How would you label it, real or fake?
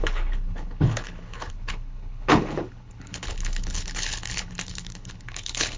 fake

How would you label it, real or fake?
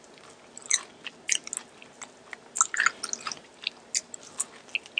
real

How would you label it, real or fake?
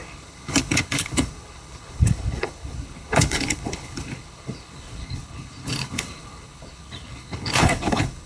fake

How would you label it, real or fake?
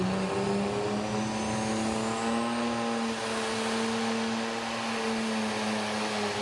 real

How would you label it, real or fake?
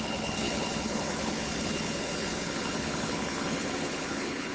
fake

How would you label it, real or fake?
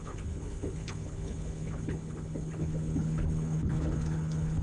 fake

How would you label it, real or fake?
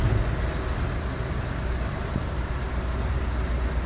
real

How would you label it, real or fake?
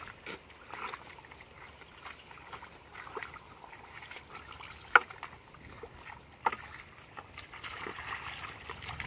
real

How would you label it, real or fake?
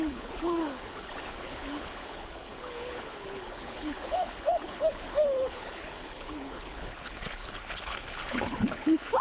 fake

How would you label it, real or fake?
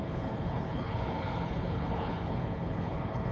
fake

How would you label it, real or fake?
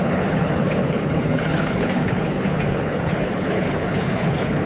fake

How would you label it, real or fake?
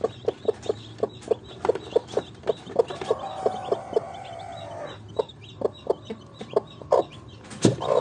real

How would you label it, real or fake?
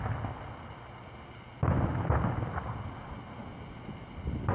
real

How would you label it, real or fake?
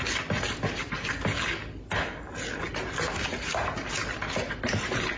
real